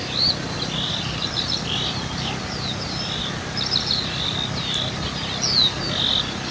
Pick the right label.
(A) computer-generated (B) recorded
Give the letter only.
B